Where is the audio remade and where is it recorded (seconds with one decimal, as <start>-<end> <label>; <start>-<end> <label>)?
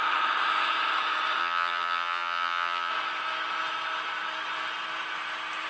0.0-1.4 recorded; 1.4-2.9 remade; 2.9-5.7 recorded